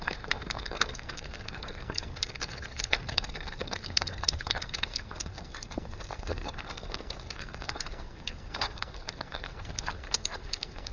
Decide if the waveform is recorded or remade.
remade